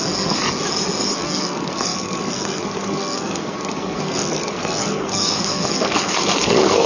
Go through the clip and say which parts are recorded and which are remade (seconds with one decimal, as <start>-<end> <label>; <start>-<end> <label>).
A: 0.0-0.4 remade; 0.4-1.2 recorded; 1.2-6.9 remade